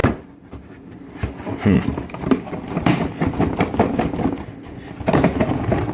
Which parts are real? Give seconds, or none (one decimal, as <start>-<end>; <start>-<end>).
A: 0.9-5.9